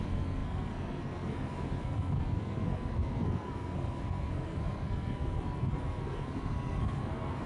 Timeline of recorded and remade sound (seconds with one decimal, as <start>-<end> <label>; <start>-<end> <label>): 0.0-7.5 remade